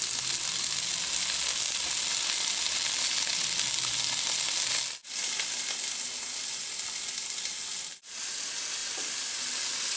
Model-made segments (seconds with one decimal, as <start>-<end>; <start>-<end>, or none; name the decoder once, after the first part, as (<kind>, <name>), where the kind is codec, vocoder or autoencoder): none